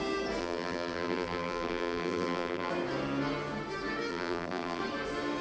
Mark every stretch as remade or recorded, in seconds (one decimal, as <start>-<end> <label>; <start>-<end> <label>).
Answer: 0.0-0.4 recorded; 0.4-2.7 remade; 2.7-4.1 recorded; 4.1-4.8 remade; 4.8-5.4 recorded